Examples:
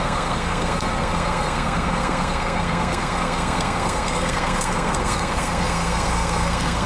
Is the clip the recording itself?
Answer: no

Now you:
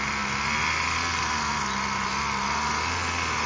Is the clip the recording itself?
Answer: yes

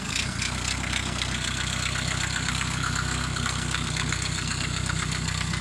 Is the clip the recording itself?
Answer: no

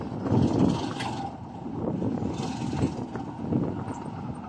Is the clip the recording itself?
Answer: yes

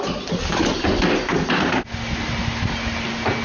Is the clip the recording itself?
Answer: yes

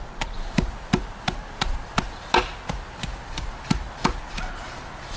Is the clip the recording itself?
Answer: yes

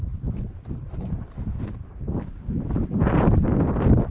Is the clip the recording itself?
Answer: yes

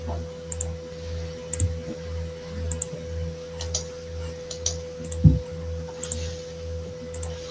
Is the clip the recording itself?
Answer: yes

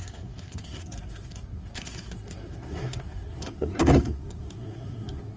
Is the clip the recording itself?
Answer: no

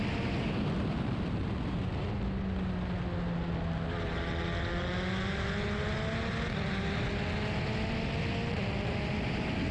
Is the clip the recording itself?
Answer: yes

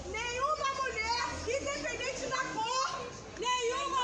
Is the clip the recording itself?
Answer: yes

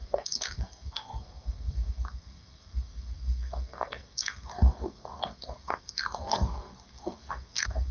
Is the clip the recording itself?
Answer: no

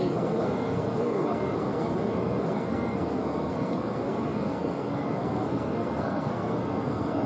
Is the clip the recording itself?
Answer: no